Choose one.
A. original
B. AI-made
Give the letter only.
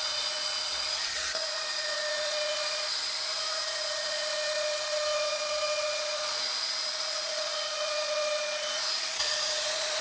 B